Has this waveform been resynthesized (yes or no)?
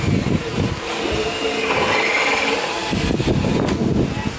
no